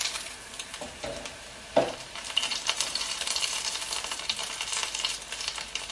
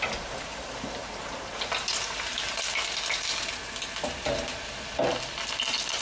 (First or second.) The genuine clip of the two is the second